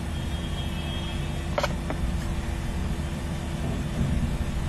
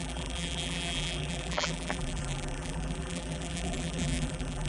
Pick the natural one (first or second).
first